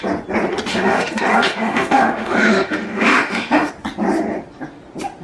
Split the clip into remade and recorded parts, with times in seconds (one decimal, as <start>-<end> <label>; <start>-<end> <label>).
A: 0.0-0.7 recorded; 0.7-3.7 remade; 3.7-5.2 recorded